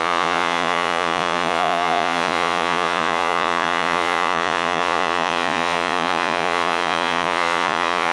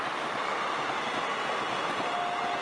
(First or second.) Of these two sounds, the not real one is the first